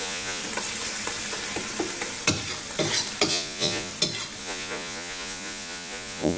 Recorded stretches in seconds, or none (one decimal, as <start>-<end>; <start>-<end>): 0.4-3.3; 3.9-4.4